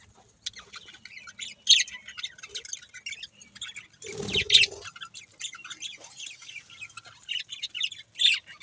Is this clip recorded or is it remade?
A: recorded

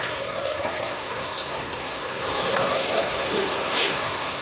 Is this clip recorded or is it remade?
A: remade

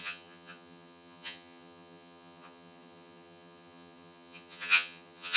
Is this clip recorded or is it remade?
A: remade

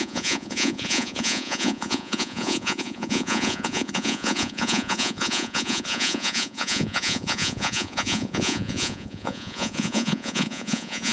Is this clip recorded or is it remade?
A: remade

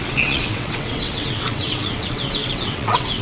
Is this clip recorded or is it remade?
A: remade